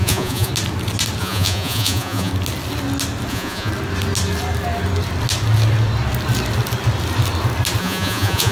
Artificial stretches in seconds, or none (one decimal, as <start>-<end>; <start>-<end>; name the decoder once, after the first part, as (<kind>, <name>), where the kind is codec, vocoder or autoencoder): 0.0-0.5 (vocoder, Vocos); 1.2-2.3; 3.3-3.7; 7.8-8.5